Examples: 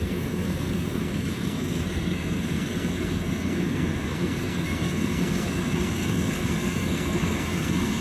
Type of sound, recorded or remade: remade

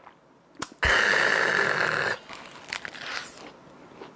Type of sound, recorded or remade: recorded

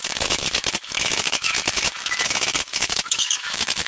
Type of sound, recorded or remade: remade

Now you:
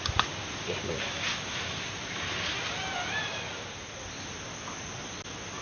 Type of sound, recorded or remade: recorded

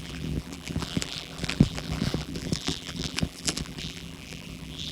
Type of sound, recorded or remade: remade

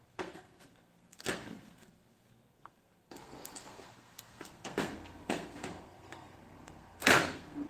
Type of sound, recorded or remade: remade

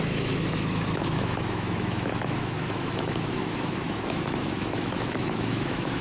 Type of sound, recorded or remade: remade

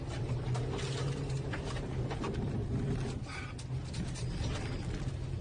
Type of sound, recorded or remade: recorded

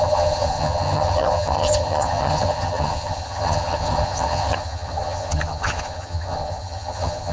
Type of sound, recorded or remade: remade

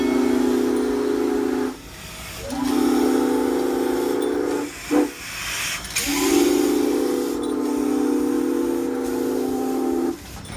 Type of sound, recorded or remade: recorded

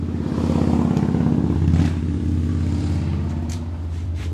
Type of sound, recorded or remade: remade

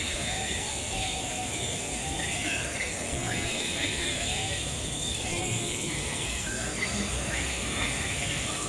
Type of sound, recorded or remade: remade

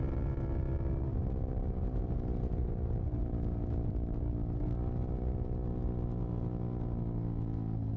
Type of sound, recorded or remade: recorded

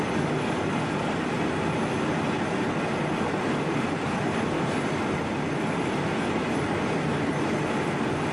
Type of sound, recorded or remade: recorded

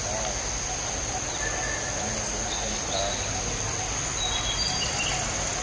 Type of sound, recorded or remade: recorded